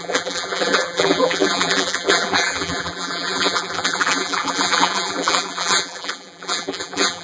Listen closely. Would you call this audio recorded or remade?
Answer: remade